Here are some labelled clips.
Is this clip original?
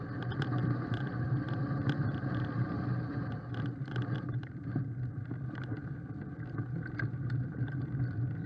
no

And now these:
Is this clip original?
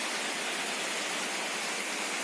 no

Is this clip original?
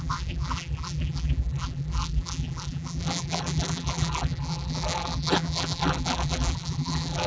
no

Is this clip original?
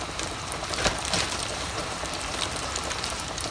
no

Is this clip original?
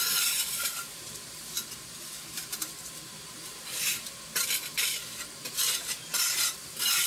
no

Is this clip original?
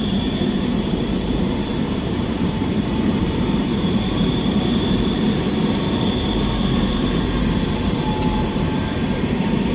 no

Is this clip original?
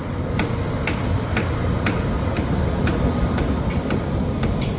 no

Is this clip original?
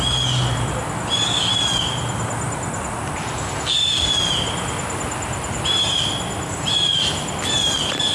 yes